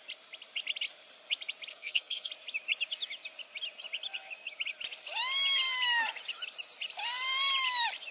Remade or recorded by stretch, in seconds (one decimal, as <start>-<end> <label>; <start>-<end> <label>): 0.0-1.7 recorded; 1.7-2.3 remade; 2.3-8.1 recorded